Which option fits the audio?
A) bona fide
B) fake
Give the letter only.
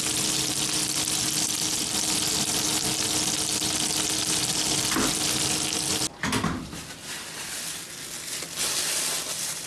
A